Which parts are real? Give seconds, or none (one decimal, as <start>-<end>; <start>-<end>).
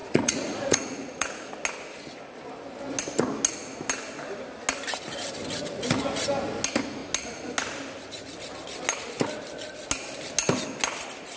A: 1.5-11.4